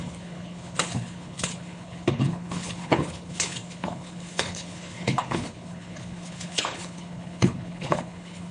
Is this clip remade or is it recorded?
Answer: remade